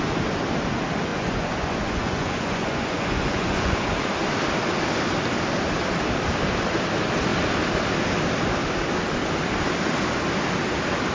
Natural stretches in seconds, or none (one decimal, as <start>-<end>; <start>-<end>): 0.0-1.1; 3.7-11.1